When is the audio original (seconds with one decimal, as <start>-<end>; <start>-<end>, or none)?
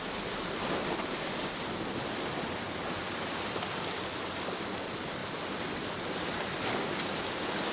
0.0-7.7